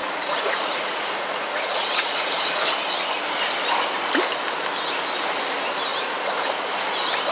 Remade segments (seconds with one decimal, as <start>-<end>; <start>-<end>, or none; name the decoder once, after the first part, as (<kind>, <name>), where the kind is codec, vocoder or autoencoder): 0.0-2.7 (vocoder, Vocos); 5.9-6.5